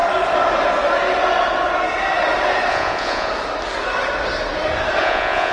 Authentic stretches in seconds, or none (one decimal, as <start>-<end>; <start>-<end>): 0.0-2.7; 3.3-5.0